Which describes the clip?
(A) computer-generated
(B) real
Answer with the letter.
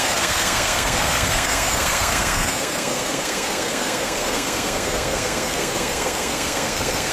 A